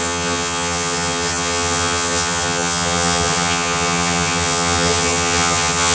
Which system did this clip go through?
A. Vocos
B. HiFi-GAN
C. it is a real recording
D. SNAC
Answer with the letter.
B